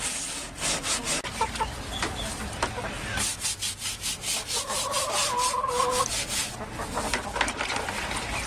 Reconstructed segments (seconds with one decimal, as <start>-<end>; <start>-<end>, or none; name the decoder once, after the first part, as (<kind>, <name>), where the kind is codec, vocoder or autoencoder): none